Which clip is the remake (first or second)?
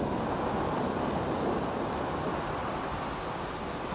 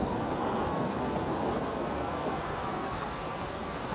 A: second